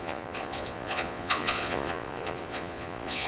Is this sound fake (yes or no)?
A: yes